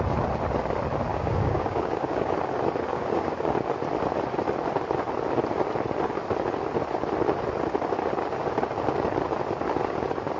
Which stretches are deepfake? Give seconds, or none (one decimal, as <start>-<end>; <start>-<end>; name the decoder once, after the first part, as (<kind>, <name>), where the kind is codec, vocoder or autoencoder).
1.1-2.3 (codec, DAC); 2.9-3.5